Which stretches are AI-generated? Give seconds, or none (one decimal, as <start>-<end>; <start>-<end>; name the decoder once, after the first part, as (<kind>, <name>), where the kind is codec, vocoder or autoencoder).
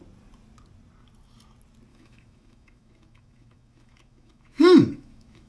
1.9-5.5 (autoencoder, DAC-VAE)